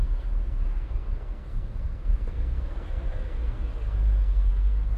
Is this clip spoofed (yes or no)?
yes